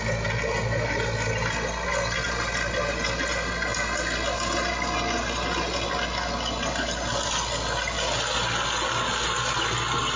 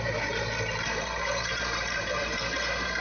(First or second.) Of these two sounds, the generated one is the second